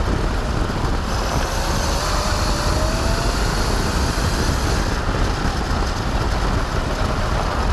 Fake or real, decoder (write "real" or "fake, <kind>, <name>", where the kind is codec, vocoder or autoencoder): real